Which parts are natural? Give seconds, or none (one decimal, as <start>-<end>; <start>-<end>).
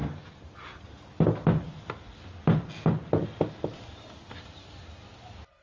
0.0-5.6